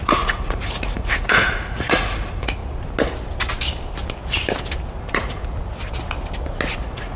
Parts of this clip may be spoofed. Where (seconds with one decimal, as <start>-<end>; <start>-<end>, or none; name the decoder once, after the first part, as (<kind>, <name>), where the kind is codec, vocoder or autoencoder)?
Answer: 0.0-2.6 (vocoder, Vocos); 5.0-5.4; 6.8-7.2